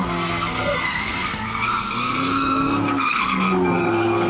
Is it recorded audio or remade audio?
remade